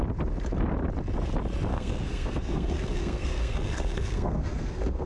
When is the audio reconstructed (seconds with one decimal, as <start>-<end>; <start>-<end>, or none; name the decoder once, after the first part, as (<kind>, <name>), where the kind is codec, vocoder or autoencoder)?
1.7-5.1 (codec, SNAC)